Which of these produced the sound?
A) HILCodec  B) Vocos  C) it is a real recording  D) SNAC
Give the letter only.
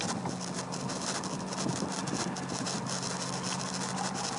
C